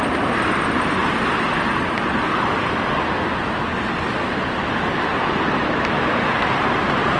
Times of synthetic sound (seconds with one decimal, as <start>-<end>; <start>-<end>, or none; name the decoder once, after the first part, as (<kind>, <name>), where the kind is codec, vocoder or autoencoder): 0.0-1.0 (vocoder, BigVGAN v2); 5.2-7.2